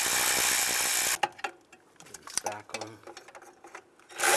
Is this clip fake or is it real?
real